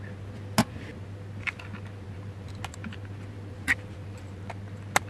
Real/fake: real